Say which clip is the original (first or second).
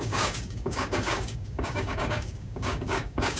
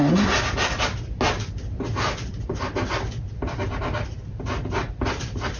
second